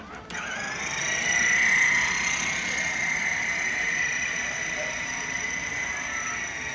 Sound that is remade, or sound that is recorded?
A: recorded